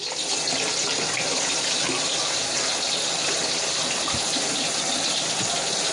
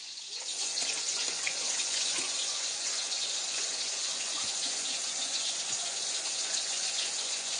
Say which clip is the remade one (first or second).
second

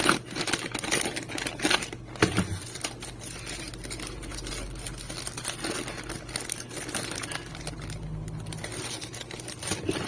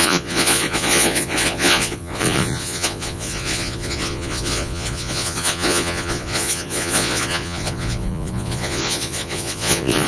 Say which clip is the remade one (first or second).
second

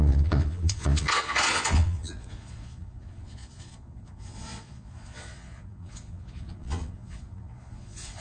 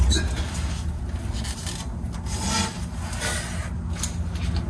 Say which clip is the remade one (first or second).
first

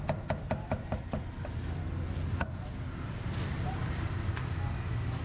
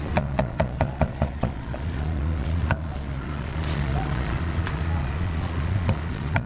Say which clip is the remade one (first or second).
second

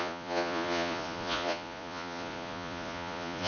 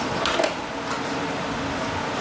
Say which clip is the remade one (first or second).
first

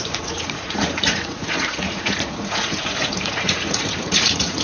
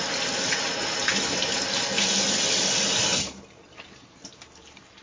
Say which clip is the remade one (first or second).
first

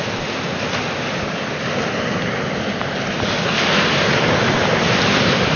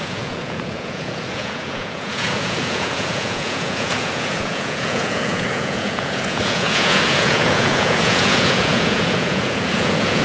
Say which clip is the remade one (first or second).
second